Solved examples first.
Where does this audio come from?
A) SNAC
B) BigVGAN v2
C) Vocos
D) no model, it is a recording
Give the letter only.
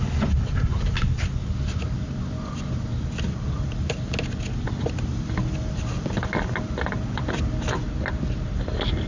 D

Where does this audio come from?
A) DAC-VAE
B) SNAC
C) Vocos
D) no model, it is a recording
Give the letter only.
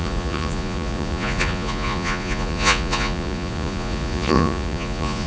C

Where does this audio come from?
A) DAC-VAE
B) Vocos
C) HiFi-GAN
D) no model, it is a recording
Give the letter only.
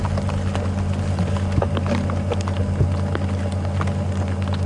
D